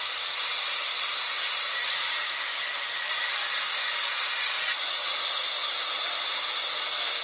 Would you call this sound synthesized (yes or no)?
no